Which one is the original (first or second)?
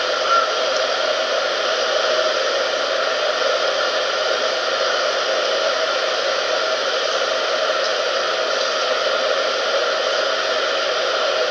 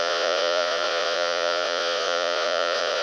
first